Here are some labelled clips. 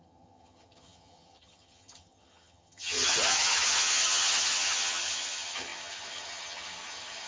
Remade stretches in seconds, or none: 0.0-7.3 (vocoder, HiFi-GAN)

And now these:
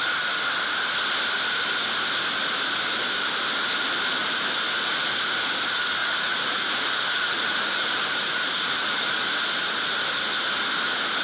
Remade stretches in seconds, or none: 6.0-9.3 (vocoder, Vocos)

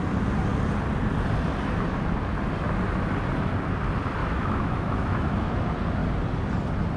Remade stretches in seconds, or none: 4.2-5.6 (autoencoder, DAC-VAE)

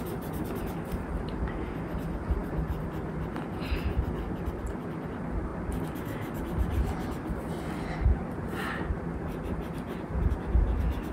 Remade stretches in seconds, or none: none

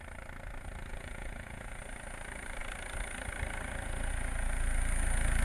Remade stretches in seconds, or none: 0.9-1.8 (vocoder, Vocos)